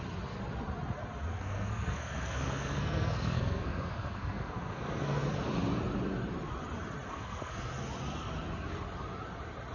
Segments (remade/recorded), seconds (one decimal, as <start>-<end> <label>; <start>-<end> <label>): 0.0-1.3 recorded; 1.3-5.2 remade; 5.2-7.1 recorded; 7.1-7.7 remade; 7.7-9.7 recorded